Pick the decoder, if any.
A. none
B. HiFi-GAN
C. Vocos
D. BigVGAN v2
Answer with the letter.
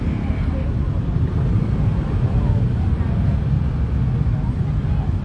A